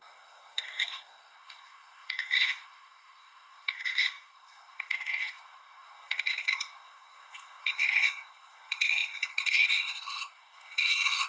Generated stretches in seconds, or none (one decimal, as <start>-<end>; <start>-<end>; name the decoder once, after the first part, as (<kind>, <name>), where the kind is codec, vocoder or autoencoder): 0.0-11.3 (codec, SNAC)